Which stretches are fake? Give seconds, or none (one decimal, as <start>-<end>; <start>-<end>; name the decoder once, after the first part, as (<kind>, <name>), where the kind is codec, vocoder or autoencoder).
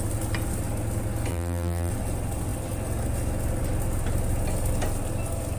1.3-1.9 (vocoder, BigVGAN v2)